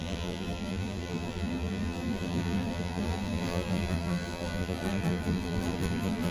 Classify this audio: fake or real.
fake